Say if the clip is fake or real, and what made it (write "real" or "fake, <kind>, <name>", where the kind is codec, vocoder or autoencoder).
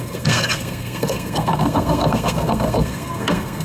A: fake, codec, SNAC